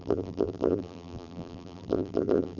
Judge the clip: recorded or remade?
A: remade